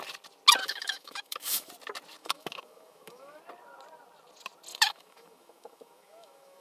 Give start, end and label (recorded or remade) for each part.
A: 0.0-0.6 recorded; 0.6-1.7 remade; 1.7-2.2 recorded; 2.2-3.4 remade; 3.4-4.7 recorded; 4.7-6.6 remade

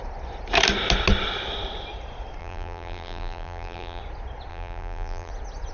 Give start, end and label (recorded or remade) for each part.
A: 0.0-2.4 recorded; 2.4-4.0 remade; 4.0-4.5 recorded; 4.5-5.3 remade; 5.3-5.7 recorded

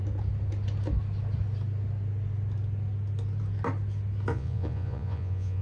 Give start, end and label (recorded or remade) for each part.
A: 0.0-4.3 recorded; 4.3-5.6 remade

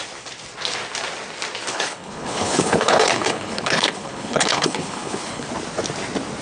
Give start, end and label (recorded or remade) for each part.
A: 0.0-1.7 recorded; 1.7-5.5 remade; 5.5-6.4 recorded

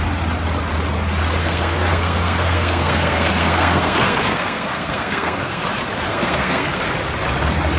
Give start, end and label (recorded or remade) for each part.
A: 0.0-1.4 recorded; 1.4-5.6 remade; 5.6-6.1 recorded; 6.1-6.8 remade; 6.8-7.8 recorded

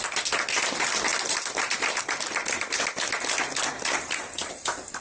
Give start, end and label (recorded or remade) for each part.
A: 0.0-5.0 recorded

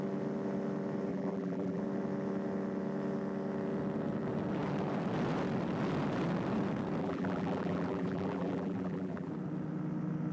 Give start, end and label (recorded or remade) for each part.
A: 0.0-1.1 recorded; 1.1-1.8 remade; 1.8-7.0 recorded; 7.0-9.3 remade; 9.3-10.3 recorded

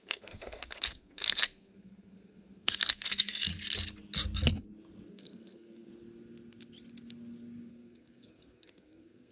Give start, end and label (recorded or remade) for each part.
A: 0.0-3.5 remade; 3.5-5.1 recorded; 5.1-5.9 remade; 5.9-7.7 recorded; 7.7-9.3 remade